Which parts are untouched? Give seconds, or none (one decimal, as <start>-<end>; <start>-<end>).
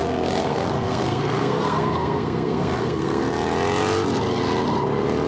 3.2-5.3